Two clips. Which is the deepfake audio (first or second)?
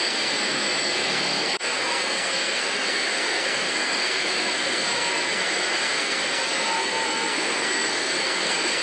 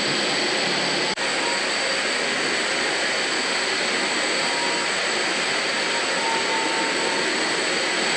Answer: first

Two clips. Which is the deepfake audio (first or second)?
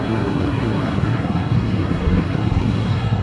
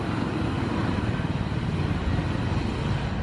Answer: first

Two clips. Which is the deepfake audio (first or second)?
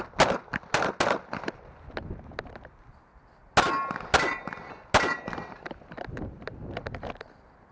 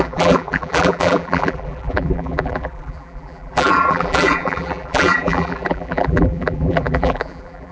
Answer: second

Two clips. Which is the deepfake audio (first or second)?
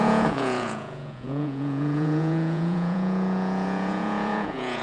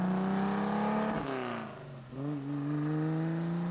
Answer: first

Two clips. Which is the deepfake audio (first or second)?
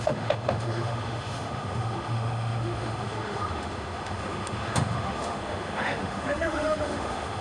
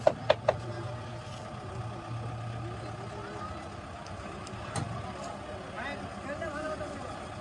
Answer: first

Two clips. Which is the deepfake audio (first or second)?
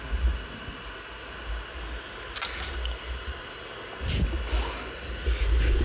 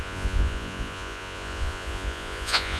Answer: second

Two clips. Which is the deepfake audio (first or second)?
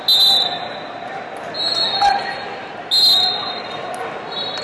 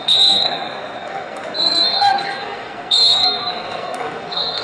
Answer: second